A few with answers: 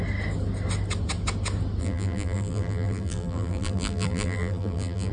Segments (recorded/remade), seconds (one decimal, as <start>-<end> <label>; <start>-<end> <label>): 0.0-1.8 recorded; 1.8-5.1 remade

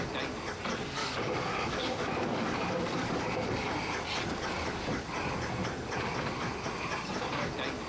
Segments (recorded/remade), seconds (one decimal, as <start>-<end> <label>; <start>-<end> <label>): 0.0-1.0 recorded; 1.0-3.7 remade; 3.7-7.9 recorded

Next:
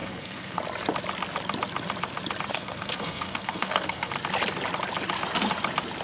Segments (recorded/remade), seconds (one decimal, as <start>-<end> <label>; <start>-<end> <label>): 0.0-0.6 remade; 0.6-2.5 recorded; 2.5-4.1 remade; 4.1-6.0 recorded

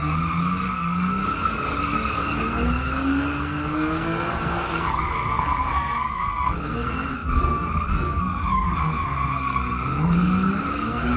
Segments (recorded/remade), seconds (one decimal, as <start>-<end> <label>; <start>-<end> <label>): 0.0-11.2 remade

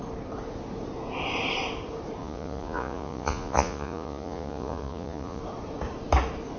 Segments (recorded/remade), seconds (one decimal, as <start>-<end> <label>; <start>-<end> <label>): 0.0-2.2 recorded; 2.2-5.4 remade; 5.4-6.6 recorded

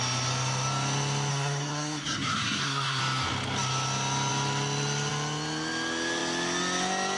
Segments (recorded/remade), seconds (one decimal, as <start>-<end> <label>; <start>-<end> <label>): 0.0-1.3 recorded; 1.3-3.0 remade; 3.0-7.2 recorded

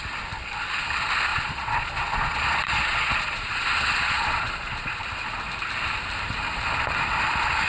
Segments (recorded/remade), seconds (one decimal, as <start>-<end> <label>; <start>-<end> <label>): 0.0-1.3 recorded; 1.3-5.0 remade; 5.0-7.7 recorded